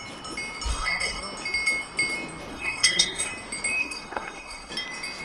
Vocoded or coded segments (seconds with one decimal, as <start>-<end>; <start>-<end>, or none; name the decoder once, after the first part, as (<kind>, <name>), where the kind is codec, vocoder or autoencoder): 0.7-1.2 (codec, SNAC); 2.5-3.3; 3.8-4.7